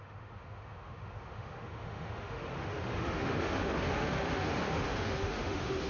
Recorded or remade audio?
remade